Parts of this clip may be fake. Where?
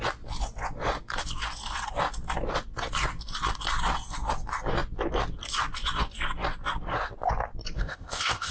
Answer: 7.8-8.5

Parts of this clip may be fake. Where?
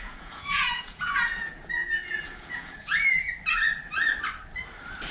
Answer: 0.0-3.3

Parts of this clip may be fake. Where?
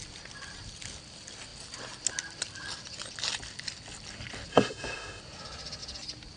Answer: 4.5-5.2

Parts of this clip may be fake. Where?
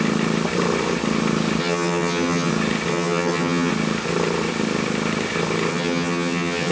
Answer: 1.6-2.5; 2.9-3.7; 5.7-6.7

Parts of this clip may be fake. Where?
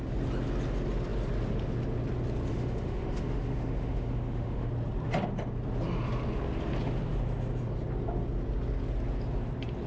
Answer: 2.5-4.7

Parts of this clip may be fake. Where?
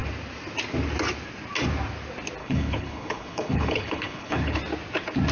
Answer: 2.4-4.6